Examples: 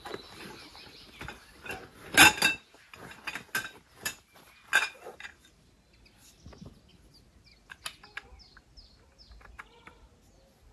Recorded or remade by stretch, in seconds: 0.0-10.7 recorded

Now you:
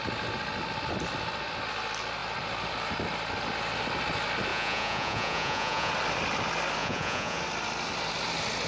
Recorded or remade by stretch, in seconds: 0.0-4.5 recorded; 4.5-5.9 remade; 5.9-6.8 recorded; 6.8-7.4 remade; 7.4-8.7 recorded

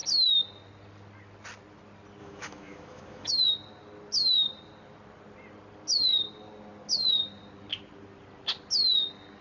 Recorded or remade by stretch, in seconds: 0.0-2.2 recorded; 2.2-3.3 remade; 3.3-9.4 recorded

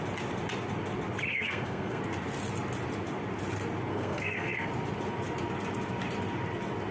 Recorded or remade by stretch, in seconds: 0.0-1.3 recorded; 1.3-2.0 remade; 2.0-3.9 recorded; 3.9-4.7 remade; 4.7-6.9 recorded